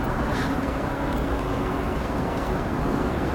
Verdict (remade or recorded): remade